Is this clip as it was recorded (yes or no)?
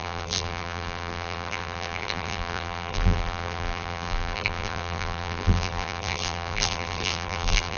no